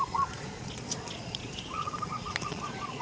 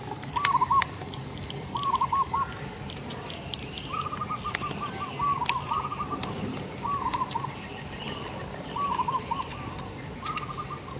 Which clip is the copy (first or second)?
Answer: first